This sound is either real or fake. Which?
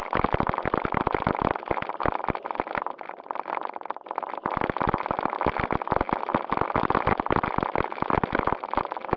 real